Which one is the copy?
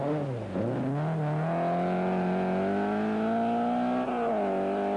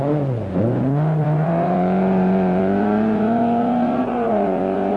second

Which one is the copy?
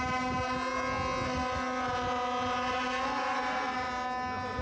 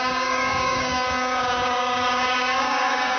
second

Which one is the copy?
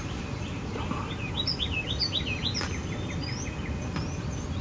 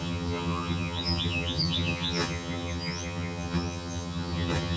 second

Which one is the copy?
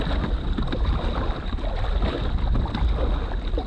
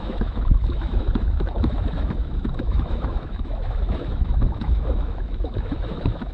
second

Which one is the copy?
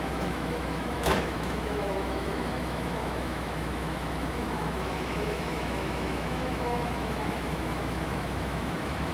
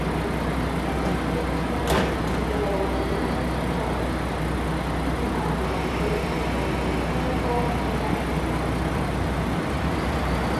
first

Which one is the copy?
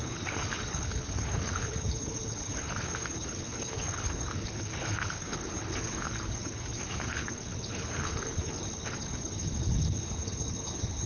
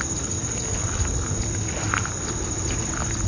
first